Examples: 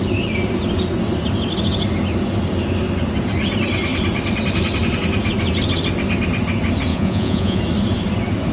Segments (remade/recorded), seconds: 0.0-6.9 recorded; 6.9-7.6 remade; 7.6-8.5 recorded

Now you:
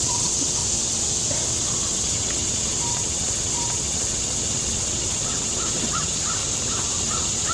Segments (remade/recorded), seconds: 0.0-0.6 remade; 0.6-1.5 recorded; 1.5-6.4 remade; 6.4-7.0 recorded; 7.0-7.5 remade

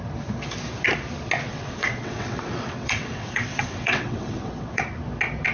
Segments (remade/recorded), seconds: 0.0-1.5 recorded; 1.5-4.8 remade; 4.8-5.5 recorded

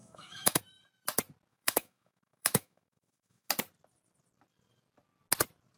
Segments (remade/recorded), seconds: 0.0-0.6 remade; 0.6-1.5 recorded; 1.5-3.5 remade; 3.5-5.8 recorded